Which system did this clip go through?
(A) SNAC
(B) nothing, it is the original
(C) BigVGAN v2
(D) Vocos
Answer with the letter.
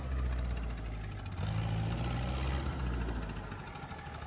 B